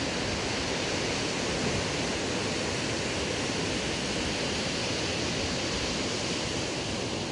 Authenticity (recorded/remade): recorded